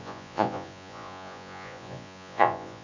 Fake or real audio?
fake